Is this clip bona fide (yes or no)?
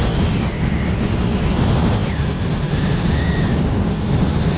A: yes